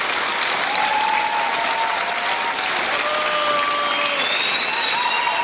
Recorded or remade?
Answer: recorded